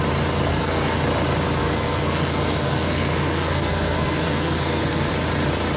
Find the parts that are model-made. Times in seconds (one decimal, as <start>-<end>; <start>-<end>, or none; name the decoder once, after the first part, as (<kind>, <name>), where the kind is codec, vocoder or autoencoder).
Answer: 0.5-1.0 (codec, SNAC); 1.6-5.1